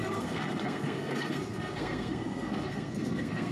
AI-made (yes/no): yes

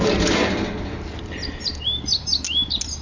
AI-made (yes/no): no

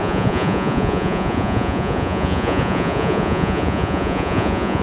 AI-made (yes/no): yes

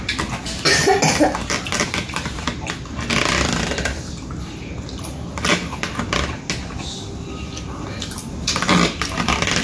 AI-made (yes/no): no